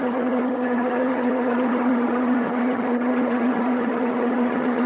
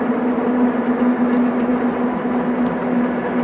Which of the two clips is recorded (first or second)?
second